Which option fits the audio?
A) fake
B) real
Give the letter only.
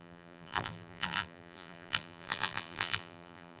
A